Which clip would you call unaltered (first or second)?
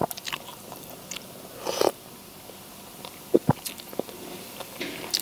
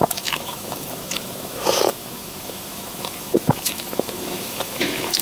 first